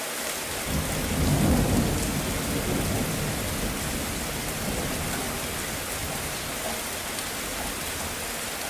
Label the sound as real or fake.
real